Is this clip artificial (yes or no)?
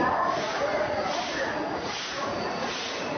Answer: yes